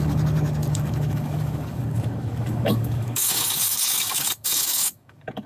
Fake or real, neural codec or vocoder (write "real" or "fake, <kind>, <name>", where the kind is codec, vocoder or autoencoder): fake, codec, DAC